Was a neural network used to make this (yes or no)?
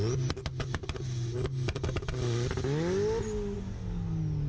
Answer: no